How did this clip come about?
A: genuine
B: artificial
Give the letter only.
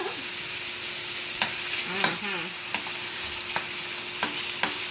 A